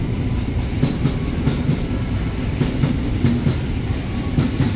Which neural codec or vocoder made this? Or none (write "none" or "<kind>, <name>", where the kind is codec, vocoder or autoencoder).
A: none